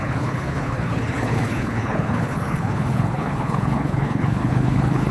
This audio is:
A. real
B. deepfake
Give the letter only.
B